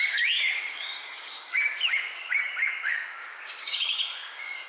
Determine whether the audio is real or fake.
fake